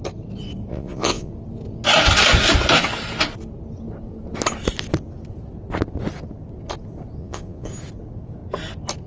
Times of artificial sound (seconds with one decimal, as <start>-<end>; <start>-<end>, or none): 0.7-1.3; 7.2-7.7